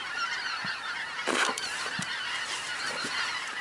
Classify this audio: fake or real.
fake